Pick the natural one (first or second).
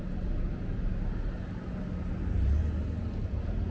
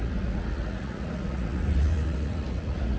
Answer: first